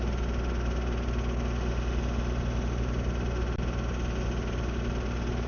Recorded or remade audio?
recorded